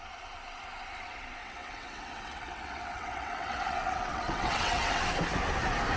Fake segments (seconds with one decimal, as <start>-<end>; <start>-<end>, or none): 1.4-5.0